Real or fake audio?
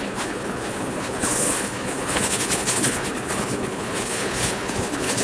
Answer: fake